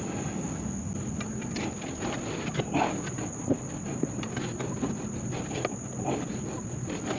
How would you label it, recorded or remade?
recorded